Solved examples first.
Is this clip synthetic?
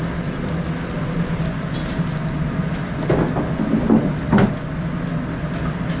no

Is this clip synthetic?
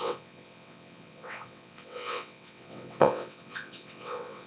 yes